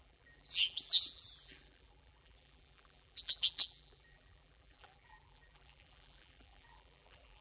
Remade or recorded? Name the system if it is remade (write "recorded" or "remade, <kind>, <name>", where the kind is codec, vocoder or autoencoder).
remade, vocoder, BigVGAN v2